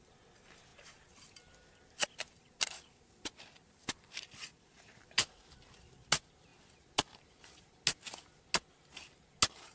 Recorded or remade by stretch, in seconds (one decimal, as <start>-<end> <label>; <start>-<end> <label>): 0.0-9.7 recorded